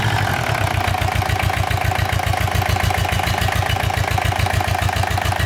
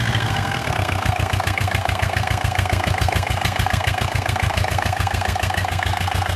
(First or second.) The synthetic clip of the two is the second